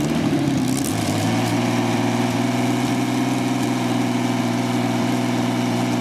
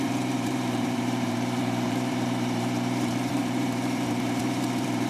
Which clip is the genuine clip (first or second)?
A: first